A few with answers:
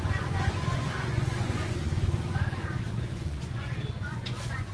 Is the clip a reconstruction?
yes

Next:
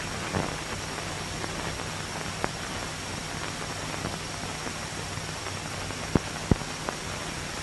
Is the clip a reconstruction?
no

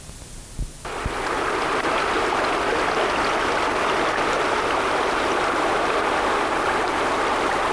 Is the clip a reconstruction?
no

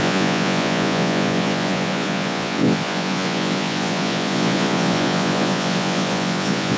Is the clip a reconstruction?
yes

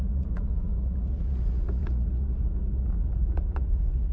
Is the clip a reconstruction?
yes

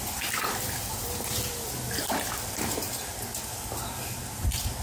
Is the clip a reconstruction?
no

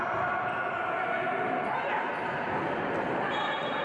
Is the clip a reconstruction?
no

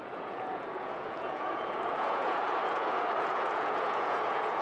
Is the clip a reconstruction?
yes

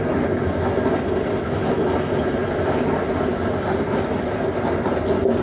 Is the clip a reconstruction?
no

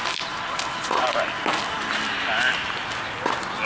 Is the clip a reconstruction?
no